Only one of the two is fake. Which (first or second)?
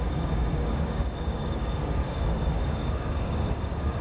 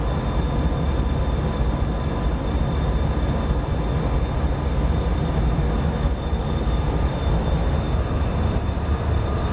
first